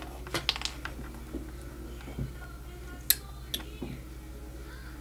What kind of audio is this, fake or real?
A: real